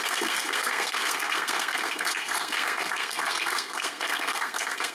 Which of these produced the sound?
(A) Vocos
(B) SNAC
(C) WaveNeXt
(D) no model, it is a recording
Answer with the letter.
B